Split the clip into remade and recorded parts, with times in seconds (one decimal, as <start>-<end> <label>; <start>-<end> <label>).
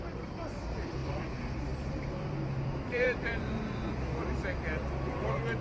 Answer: 0.0-5.6 remade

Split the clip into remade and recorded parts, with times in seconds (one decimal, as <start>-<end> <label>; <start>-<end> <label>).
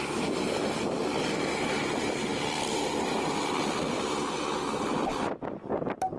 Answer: 0.0-6.2 recorded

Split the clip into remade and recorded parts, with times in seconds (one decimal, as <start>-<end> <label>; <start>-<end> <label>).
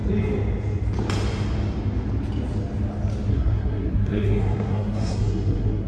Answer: 0.0-3.3 recorded; 3.3-5.9 remade